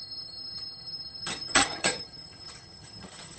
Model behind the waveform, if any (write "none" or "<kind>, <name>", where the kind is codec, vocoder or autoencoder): vocoder, HiFi-GAN